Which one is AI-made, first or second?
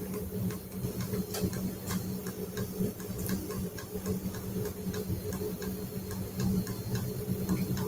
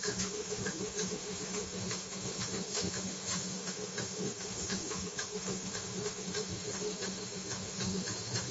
second